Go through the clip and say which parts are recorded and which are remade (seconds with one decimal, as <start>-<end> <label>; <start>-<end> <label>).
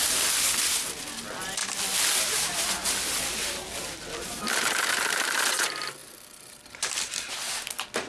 0.0-4.9 recorded; 4.9-5.4 remade; 5.4-6.0 recorded; 6.0-6.9 remade; 6.9-8.1 recorded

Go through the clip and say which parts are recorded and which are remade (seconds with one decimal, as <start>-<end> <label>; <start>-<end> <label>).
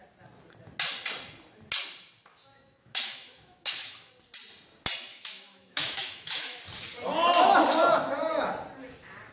0.0-2.3 recorded; 2.3-4.1 remade; 4.1-5.1 recorded; 5.1-6.6 remade; 6.6-9.3 recorded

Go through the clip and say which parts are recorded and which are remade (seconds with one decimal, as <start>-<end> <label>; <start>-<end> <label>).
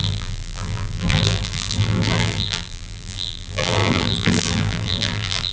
0.0-5.5 remade